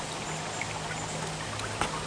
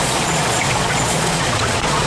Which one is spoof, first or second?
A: second